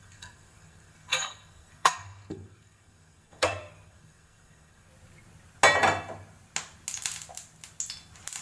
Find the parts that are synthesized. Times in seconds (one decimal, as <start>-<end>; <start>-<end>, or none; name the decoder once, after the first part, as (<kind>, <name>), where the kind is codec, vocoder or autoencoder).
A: 0.0-4.9 (codec, SNAC)